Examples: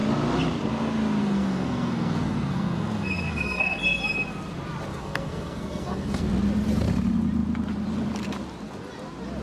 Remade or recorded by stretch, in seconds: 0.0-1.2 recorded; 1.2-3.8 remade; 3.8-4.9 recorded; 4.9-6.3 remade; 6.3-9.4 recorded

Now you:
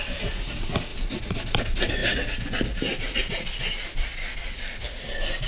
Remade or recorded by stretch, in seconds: 0.0-0.9 recorded; 0.9-1.6 remade; 1.6-5.5 recorded

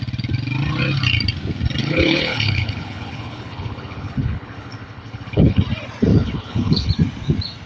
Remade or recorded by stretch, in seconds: 0.0-1.8 recorded; 1.8-5.6 remade; 5.6-6.1 recorded; 6.1-6.9 remade; 6.9-7.7 recorded

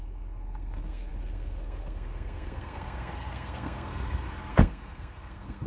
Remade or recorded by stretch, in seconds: 0.0-5.7 remade